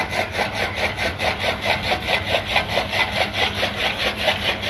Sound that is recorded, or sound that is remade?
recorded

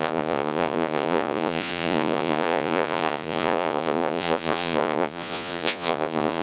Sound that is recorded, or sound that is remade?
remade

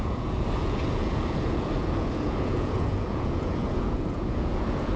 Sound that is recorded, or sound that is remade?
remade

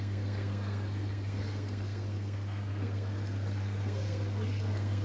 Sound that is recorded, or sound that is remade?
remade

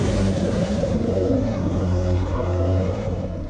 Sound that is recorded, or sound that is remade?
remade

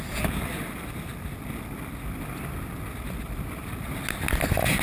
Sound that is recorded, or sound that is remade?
recorded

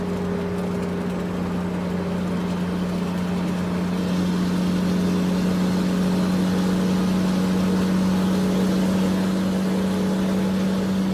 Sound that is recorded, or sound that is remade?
recorded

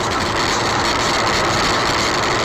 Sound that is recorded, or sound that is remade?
recorded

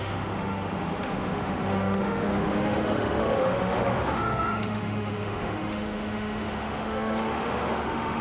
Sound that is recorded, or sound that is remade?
remade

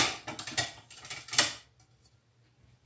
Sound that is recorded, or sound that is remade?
recorded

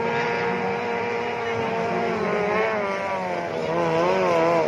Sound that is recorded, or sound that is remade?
recorded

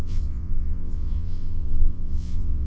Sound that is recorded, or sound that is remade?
remade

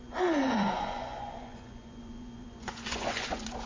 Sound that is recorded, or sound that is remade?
remade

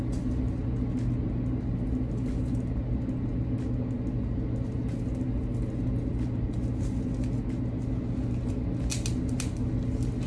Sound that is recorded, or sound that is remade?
recorded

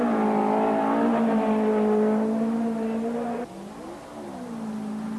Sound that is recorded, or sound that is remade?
recorded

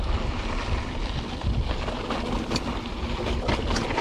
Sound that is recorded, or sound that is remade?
recorded